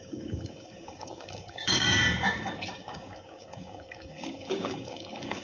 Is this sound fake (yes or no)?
yes